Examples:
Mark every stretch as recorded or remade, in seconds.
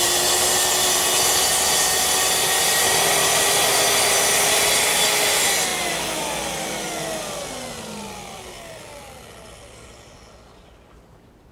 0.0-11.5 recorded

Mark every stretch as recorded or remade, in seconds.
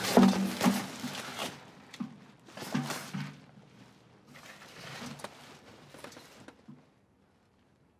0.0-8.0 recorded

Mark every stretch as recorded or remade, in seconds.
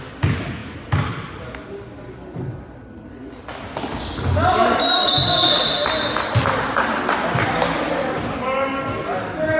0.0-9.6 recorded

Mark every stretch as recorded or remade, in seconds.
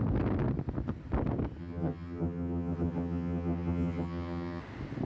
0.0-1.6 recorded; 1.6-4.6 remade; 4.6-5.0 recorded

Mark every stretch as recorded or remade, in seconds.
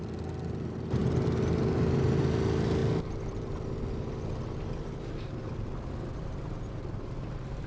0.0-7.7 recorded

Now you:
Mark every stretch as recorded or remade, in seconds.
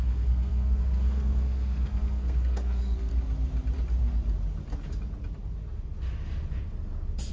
0.0-3.1 remade; 3.1-7.3 recorded